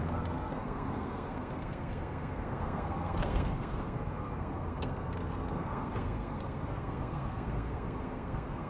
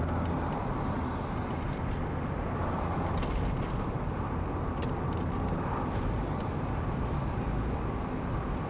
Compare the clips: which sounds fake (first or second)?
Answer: first